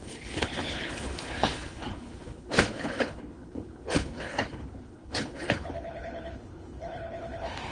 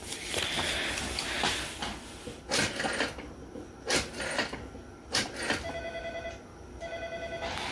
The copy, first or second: first